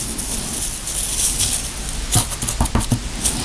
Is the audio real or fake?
real